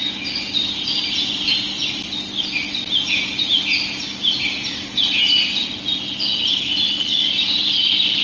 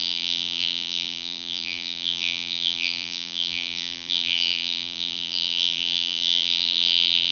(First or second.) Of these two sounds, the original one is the first